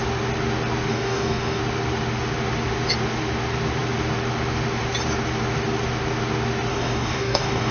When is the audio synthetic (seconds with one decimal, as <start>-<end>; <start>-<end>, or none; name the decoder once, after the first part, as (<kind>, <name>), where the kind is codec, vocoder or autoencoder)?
0.9-1.6 (codec, DAC); 6.7-7.7